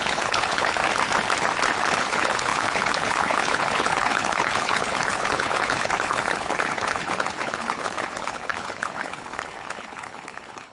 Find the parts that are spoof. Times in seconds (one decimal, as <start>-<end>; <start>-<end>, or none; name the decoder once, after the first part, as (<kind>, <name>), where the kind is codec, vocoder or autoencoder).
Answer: 0.0-0.8 (codec, HILCodec); 1.8-10.7